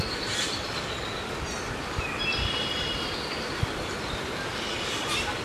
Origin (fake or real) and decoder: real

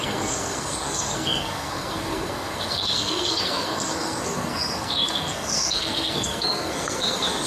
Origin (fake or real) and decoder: fake, codec, SNAC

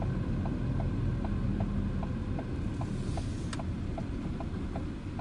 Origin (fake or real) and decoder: real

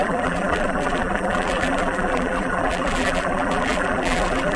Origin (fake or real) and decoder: fake, vocoder, BigVGAN v2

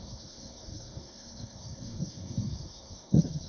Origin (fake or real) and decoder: fake, codec, SNAC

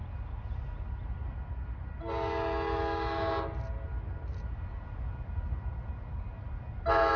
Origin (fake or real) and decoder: real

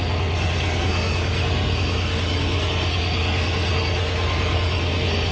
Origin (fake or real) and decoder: fake, codec, SNAC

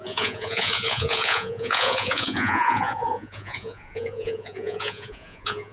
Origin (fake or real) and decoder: fake, vocoder, Vocos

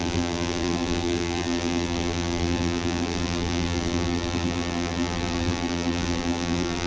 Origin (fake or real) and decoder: fake, vocoder, BigVGAN v2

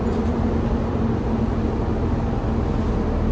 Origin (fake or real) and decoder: real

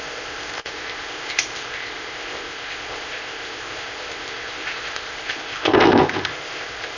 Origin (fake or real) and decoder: fake, codec, ZipCodec